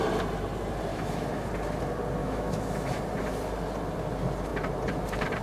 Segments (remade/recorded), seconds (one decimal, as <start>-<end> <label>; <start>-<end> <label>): 0.0-0.9 recorded; 0.9-1.5 remade; 1.5-2.2 recorded; 2.2-3.0 remade; 3.0-5.4 recorded